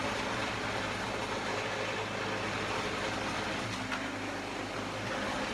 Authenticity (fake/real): real